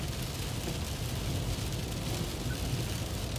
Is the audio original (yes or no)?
yes